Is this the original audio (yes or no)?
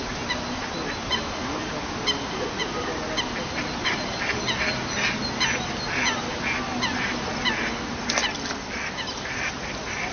yes